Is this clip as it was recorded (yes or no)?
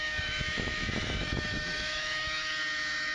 no